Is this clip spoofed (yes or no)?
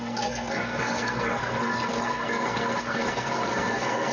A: yes